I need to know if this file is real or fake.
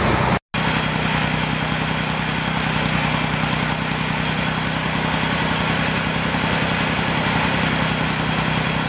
real